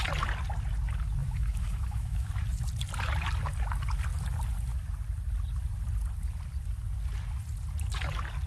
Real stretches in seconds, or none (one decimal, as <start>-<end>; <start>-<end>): 0.0-1.2; 2.3-8.5